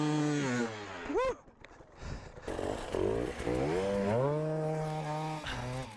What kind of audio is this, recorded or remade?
recorded